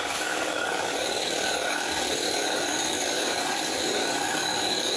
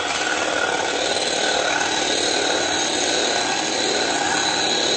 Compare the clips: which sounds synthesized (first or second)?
first